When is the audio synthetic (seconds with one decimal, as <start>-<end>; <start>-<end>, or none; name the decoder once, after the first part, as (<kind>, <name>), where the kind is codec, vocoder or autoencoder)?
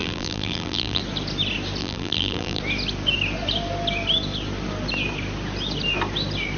0.0-1.0 (vocoder, BigVGAN v2); 1.8-2.6